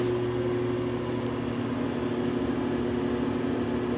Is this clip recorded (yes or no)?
yes